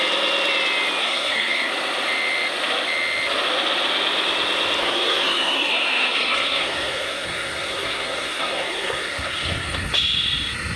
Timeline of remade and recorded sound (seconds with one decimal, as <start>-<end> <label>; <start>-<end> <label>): 0.0-1.0 recorded; 1.0-1.7 remade; 1.7-4.8 recorded; 4.8-9.9 remade; 9.9-10.8 recorded